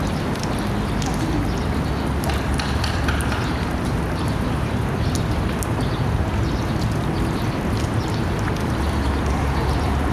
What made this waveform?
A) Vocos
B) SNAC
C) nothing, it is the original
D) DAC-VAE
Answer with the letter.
C